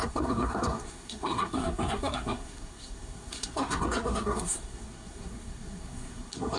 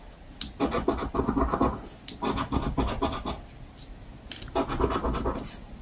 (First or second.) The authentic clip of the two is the second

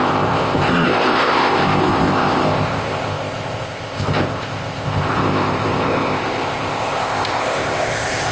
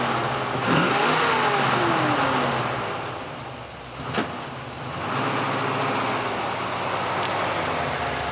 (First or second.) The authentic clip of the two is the second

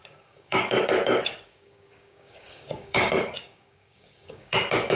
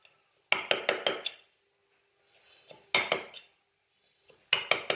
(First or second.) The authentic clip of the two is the second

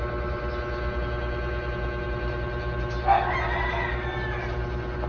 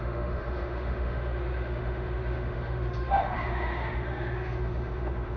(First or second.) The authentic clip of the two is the first